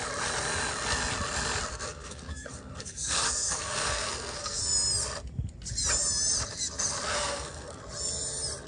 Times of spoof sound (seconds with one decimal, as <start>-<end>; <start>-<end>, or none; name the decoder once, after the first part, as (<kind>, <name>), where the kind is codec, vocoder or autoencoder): 1.7-4.6 (codec, SNAC); 7.1-7.8